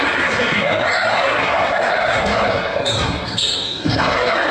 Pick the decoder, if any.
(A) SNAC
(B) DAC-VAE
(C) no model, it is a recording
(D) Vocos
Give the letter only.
A